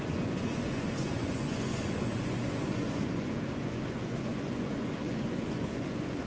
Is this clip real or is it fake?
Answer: fake